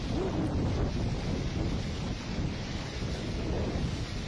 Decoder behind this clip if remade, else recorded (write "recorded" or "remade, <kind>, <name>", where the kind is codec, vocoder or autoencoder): recorded